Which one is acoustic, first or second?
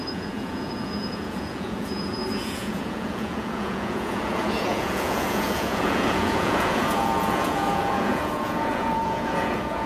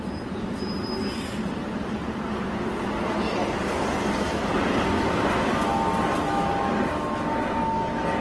second